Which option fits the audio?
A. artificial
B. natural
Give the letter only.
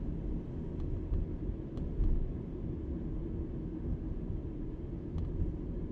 B